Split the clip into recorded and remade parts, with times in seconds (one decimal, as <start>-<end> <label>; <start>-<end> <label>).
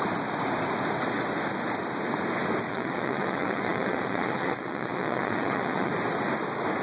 0.0-2.7 recorded; 2.7-5.9 remade; 5.9-6.8 recorded